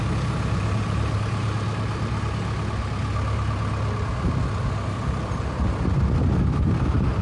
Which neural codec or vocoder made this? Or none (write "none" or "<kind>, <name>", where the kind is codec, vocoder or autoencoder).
none